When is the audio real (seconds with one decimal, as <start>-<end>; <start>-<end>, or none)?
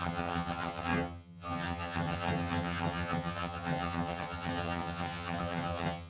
none